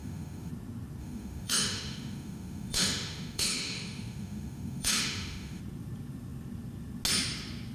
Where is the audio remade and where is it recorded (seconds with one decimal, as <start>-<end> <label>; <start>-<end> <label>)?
0.0-0.5 remade; 0.5-1.0 recorded; 1.0-5.6 remade; 5.6-7.7 recorded